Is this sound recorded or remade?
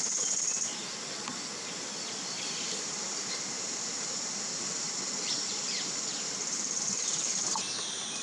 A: recorded